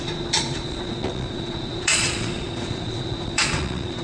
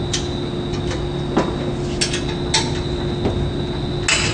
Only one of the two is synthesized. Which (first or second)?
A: first